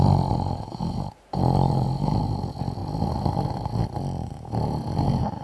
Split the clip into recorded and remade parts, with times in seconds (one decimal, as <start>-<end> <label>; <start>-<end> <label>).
0.0-5.4 recorded